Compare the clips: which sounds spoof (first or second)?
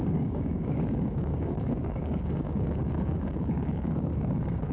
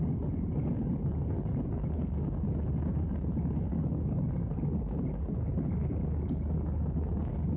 first